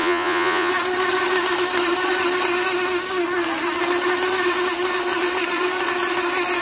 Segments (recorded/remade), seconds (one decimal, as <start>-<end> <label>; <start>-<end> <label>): 0.0-0.7 remade; 0.7-6.6 recorded